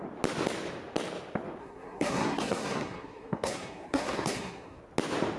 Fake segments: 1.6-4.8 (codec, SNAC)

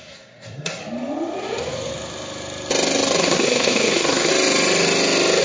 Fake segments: 0.0-0.8 (codec, SNAC); 3.2-4.3

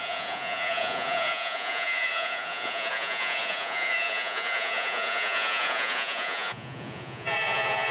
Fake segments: 0.0-7.9 (vocoder, Vocos)

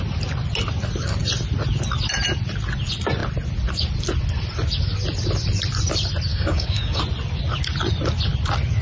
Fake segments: 6.3-7.0 (codec, DAC)